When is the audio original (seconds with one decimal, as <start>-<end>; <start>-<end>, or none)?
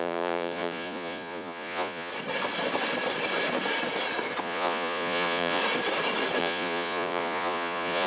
2.1-4.4; 5.6-6.4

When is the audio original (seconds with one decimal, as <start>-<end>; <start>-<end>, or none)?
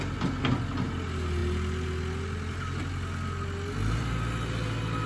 0.0-5.1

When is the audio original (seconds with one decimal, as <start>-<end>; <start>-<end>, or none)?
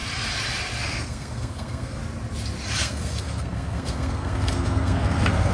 0.0-0.8; 2.0-2.8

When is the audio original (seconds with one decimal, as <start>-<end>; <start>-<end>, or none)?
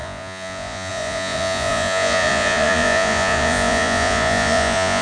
none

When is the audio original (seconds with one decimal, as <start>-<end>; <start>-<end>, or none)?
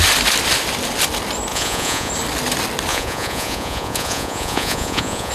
0.0-1.5; 2.1-2.9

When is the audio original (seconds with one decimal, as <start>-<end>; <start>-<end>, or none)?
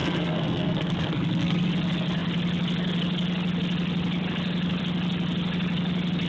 1.7-6.3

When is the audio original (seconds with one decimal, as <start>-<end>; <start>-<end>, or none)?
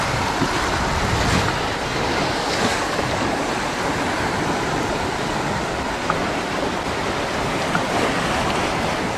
0.0-2.1; 3.4-9.2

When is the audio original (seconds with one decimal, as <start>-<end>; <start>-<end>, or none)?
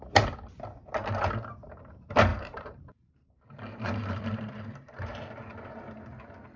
0.0-2.3; 5.7-6.6